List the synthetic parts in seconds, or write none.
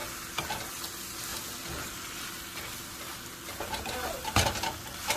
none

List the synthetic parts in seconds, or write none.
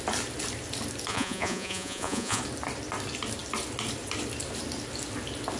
1.1-2.4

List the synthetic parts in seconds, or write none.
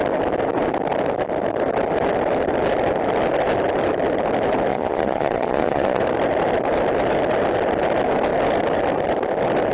4.7-6.0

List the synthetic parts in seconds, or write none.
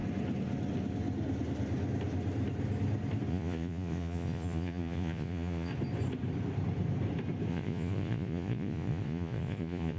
3.3-5.7; 7.5-10.0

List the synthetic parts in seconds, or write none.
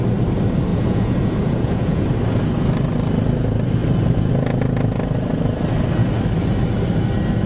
0.7-2.0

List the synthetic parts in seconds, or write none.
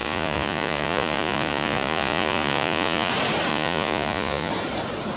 0.0-3.1; 3.5-4.5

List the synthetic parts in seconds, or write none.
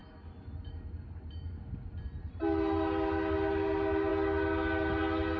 none